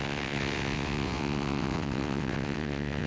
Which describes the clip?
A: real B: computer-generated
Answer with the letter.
B